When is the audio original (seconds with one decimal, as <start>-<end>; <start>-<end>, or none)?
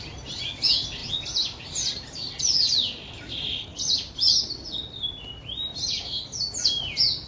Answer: 0.0-7.3